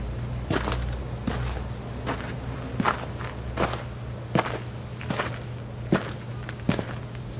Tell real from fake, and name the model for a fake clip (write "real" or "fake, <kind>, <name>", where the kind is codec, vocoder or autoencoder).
real